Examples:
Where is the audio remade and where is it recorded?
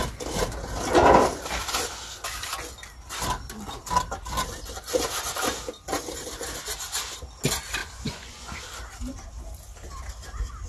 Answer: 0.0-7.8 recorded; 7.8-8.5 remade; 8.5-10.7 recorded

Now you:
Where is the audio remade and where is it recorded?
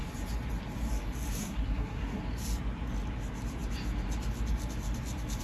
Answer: 0.0-1.4 recorded; 1.4-2.2 remade; 2.2-5.4 recorded